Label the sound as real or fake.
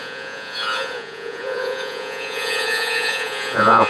fake